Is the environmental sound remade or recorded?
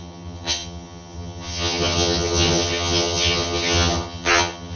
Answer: remade